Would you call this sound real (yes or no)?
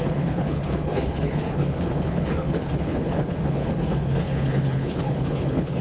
no